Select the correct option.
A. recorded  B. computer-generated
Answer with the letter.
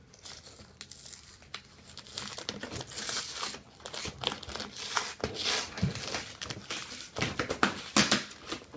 A